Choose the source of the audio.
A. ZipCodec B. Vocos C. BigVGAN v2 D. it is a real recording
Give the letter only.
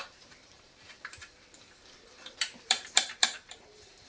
C